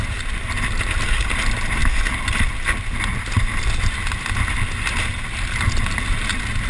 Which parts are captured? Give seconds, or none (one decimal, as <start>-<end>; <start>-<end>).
0.0-6.7

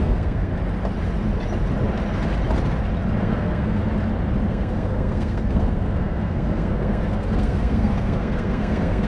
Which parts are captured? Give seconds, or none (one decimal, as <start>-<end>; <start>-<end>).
0.5-3.2; 3.8-4.5

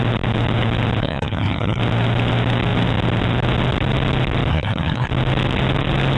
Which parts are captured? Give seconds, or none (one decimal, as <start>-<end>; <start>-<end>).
0.0-1.0; 1.8-4.5; 5.1-6.2

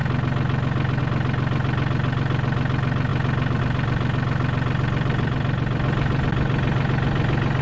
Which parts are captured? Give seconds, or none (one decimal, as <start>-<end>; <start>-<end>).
0.0-7.6

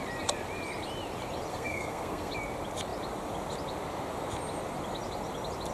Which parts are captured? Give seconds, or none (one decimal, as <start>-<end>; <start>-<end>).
0.0-1.5; 2.3-5.7

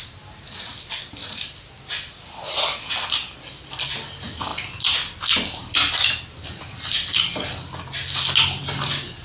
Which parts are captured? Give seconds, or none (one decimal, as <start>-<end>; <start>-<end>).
0.0-9.2

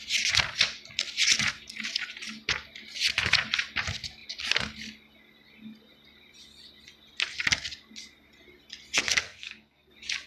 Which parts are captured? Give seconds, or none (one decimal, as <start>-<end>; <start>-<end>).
0.0-9.2; 9.9-10.3

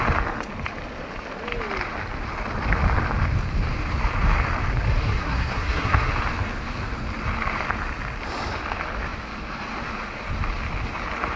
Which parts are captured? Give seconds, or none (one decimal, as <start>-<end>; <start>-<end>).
0.0-5.0; 6.1-11.4